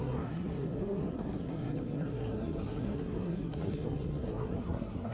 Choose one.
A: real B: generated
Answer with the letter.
B